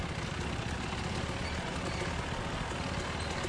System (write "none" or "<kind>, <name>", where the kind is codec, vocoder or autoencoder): none